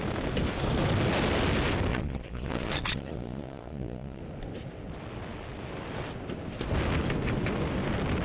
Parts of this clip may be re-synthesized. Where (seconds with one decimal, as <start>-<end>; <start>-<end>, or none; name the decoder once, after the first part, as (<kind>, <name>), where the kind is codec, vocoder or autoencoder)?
1.9-4.2 (vocoder, Vocos)